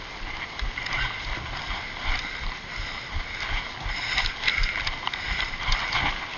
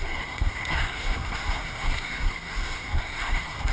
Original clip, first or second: first